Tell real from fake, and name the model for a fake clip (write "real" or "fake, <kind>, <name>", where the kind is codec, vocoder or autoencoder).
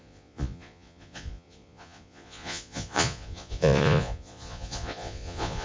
fake, vocoder, Vocos